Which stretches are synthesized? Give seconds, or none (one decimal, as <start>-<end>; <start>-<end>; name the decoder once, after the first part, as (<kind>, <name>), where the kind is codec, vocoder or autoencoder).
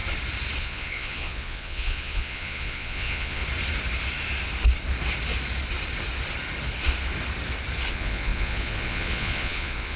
0.6-3.4 (vocoder, Vocos); 7.9-10.0